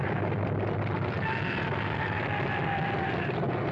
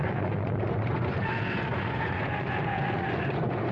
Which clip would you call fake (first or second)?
second